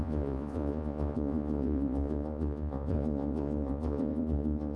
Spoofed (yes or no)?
yes